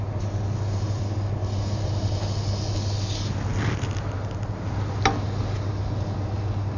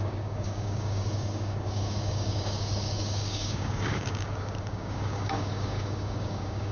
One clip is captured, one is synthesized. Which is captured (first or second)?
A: first